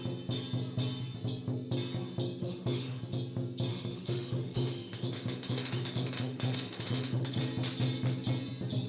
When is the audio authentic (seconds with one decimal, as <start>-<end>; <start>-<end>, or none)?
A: 0.0-2.4; 3.0-3.7; 7.4-8.9